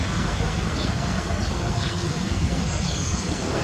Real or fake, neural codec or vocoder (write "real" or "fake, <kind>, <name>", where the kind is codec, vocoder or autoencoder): fake, codec, SNAC